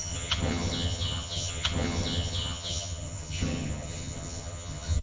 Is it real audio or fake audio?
fake